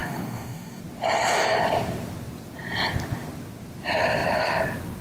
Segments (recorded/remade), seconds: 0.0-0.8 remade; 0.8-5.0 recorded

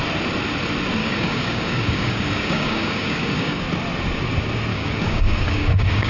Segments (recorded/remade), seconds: 0.0-1.0 recorded; 1.0-3.6 remade; 3.6-4.7 recorded; 4.7-6.1 remade

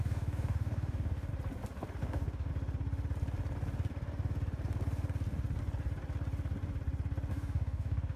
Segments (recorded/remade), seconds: 0.0-1.3 remade; 1.3-2.0 recorded; 2.0-2.5 remade; 2.5-7.3 recorded; 7.3-8.2 remade

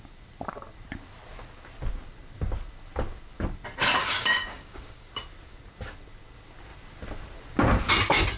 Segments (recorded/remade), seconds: 0.0-4.0 recorded; 4.0-5.1 remade; 5.1-8.4 recorded

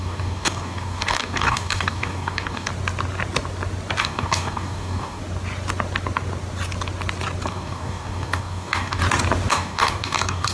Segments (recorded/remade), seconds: 0.0-2.7 remade; 2.7-4.0 recorded; 4.0-5.2 remade; 5.2-7.5 recorded; 7.5-9.0 remade; 9.0-9.5 recorded; 9.5-10.5 remade

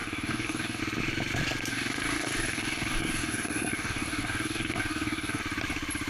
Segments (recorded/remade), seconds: 0.0-0.8 remade; 0.8-1.7 recorded; 1.7-5.4 remade; 5.4-6.1 recorded

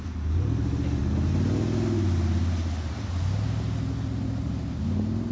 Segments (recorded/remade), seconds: 0.0-5.3 recorded